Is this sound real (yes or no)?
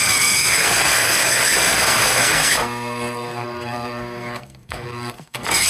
no